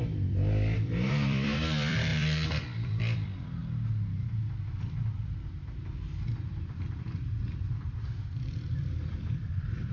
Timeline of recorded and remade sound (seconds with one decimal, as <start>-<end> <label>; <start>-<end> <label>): 0.0-3.6 remade; 3.6-6.3 recorded; 6.3-9.9 remade